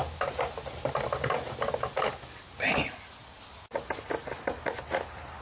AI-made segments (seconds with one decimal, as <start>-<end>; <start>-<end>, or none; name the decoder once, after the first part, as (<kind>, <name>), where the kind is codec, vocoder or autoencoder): none